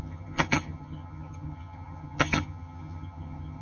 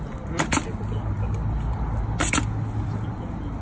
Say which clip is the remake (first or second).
first